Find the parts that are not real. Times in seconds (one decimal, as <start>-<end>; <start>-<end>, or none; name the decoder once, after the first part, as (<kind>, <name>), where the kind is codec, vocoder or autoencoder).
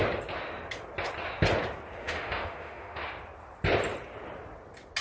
2.0-3.0 (autoencoder, DAC-VAE)